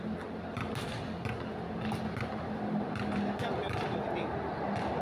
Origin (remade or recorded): recorded